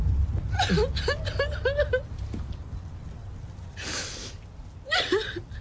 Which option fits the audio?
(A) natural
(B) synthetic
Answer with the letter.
A